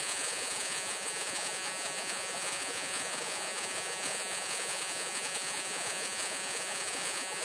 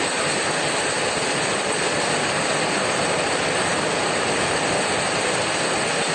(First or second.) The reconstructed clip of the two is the first